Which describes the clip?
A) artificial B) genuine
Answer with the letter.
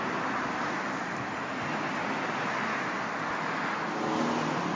B